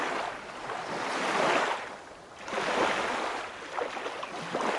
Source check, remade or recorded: recorded